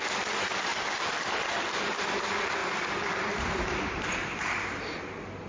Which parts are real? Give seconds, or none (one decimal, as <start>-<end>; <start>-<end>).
4.2-5.5